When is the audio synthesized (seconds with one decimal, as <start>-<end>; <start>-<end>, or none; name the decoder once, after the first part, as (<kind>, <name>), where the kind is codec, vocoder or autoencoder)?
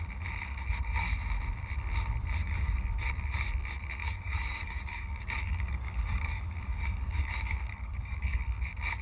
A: 2.4-2.9 (codec, DAC); 4.0-8.6